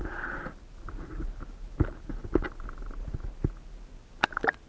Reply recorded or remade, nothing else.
recorded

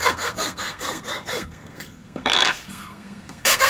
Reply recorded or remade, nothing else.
remade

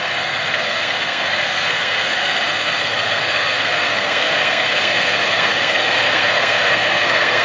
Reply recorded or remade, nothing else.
remade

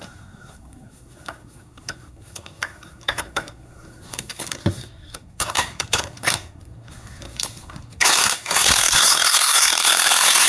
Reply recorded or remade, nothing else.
remade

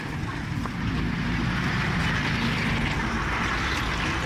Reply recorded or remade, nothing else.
recorded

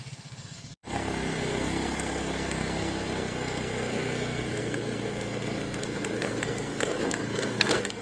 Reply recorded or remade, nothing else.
remade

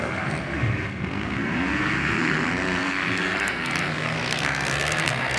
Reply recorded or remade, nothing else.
remade